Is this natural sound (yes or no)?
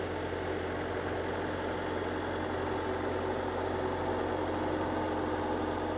yes